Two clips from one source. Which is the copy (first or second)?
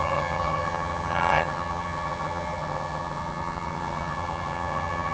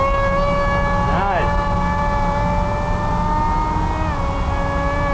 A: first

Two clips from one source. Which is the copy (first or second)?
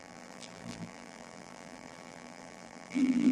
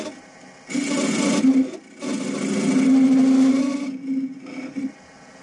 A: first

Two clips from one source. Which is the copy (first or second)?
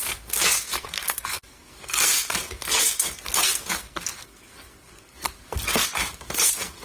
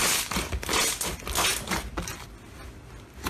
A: first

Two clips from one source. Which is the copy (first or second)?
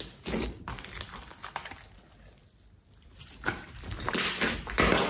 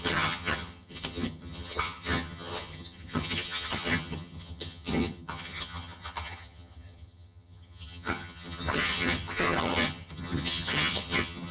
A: second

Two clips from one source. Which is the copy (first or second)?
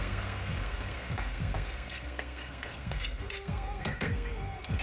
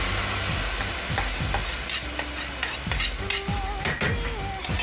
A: first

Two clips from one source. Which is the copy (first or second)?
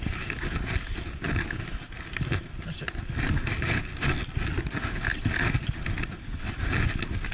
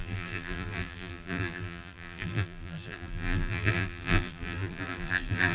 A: second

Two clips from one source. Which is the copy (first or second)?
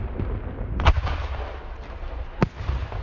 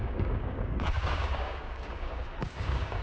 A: second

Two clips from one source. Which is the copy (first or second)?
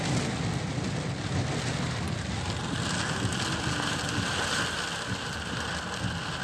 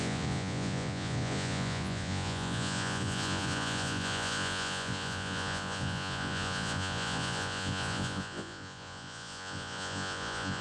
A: second